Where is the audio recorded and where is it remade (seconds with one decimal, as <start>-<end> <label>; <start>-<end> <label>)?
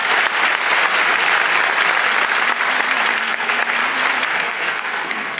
0.0-3.2 recorded; 3.2-3.6 remade; 3.6-4.3 recorded; 4.3-5.4 remade